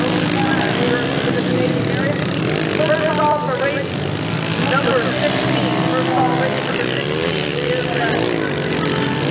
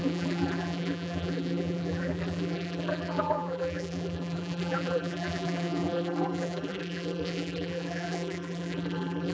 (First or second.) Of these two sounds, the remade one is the second